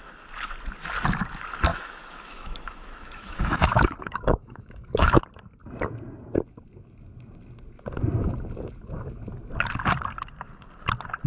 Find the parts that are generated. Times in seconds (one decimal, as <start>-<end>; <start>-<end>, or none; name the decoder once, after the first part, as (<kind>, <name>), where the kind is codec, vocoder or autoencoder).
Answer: 1.7-5.1 (autoencoder, DAC-VAE)